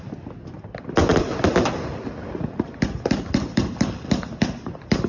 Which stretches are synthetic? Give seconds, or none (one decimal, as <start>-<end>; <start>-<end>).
none